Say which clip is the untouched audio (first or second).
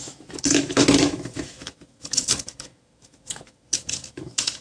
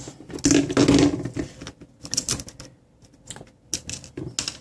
second